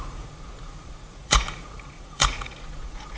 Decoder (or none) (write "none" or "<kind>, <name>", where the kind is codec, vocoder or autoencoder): vocoder, Vocos